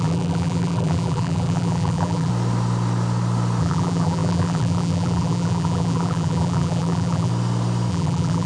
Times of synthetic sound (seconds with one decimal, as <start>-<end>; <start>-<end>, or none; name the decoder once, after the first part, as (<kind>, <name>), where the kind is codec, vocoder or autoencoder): 0.0-2.3 (vocoder, BigVGAN v2); 3.6-7.3; 7.9-8.5